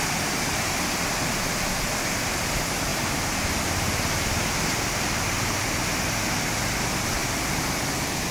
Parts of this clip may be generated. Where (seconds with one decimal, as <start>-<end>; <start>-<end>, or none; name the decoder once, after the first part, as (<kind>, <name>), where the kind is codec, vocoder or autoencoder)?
2.9-3.6 (vocoder, BigVGAN v2)